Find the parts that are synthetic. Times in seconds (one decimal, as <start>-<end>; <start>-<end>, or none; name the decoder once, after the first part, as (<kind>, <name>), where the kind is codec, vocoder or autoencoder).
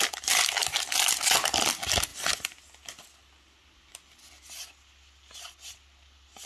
none